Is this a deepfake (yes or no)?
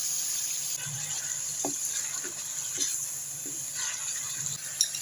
no